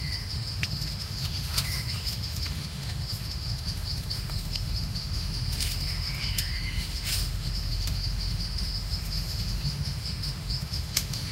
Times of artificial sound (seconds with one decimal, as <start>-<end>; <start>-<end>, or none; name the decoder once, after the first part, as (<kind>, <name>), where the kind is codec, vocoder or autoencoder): 0.0-11.3 (autoencoder, DAC-VAE)